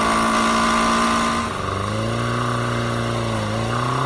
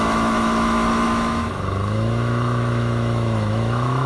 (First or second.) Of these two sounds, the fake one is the second